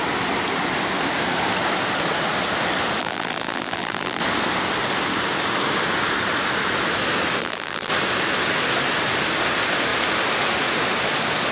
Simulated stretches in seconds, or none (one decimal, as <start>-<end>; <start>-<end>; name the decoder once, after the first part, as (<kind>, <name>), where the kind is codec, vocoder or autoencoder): 3.0-4.2 (vocoder, BigVGAN v2); 7.4-7.9